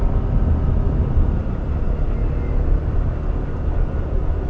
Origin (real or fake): real